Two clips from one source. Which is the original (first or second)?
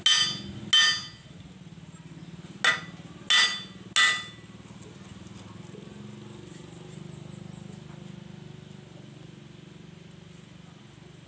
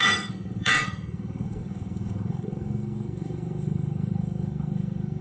first